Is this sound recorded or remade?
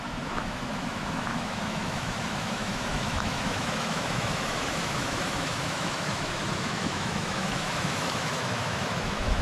remade